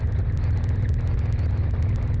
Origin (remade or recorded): recorded